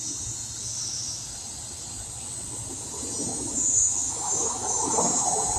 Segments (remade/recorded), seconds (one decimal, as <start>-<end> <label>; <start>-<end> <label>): 0.0-0.6 recorded; 0.6-1.5 remade; 1.5-3.3 recorded; 3.3-4.9 remade; 4.9-5.6 recorded